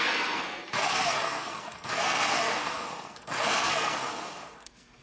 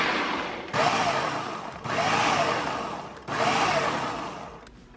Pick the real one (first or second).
second